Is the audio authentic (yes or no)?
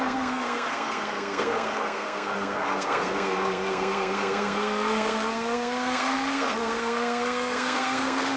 no